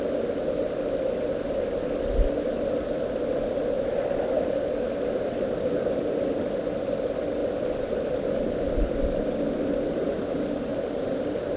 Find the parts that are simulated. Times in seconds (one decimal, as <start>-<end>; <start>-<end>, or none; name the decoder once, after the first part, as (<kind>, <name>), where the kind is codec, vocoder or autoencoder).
none